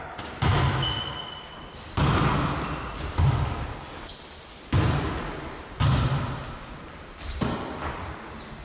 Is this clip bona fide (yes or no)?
yes